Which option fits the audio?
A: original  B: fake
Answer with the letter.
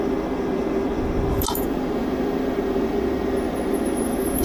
A